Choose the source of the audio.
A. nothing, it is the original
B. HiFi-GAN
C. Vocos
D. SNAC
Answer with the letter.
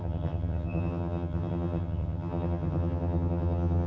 B